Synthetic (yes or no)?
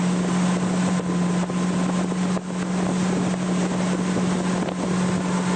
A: no